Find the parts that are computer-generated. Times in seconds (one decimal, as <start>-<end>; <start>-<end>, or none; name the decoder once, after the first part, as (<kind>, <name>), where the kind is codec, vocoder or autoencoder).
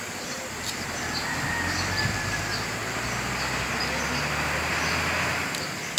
none